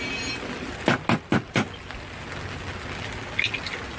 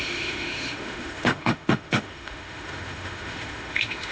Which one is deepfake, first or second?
second